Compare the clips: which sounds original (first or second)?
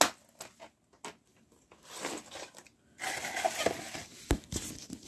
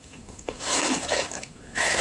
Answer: first